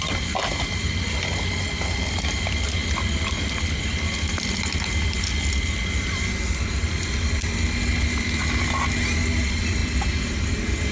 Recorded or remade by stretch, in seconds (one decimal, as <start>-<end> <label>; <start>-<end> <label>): 0.0-10.9 recorded